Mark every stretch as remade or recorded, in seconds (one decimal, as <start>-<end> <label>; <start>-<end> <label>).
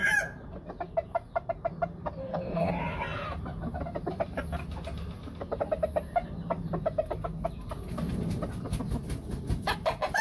0.0-2.2 recorded; 2.2-2.7 remade; 2.7-10.2 recorded